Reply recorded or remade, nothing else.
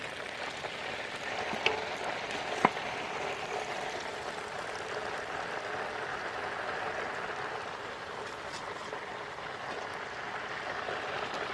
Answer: recorded